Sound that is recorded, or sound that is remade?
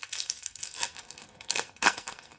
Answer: remade